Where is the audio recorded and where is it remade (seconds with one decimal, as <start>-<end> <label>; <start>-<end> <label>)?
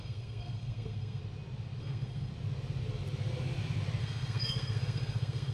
0.0-1.2 remade; 1.2-1.8 recorded; 1.8-2.3 remade; 2.3-4.0 recorded; 4.0-5.5 remade